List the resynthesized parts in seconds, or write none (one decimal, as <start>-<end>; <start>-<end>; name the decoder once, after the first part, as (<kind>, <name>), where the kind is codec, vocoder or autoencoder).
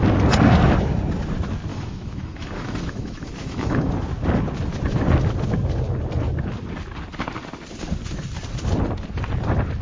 1.7-3.9 (autoencoder, DAC-VAE)